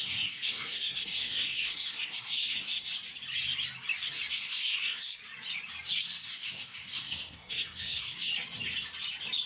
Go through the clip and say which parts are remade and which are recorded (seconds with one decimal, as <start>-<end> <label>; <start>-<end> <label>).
0.0-2.9 remade; 2.9-4.3 recorded; 4.3-5.2 remade; 5.2-6.0 recorded; 6.0-8.3 remade; 8.3-9.5 recorded